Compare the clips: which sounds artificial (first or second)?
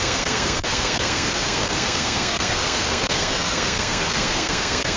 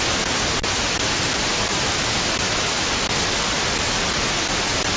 first